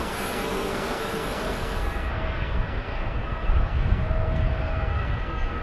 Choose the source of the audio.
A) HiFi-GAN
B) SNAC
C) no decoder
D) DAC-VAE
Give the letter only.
B